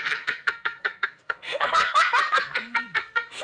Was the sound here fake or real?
fake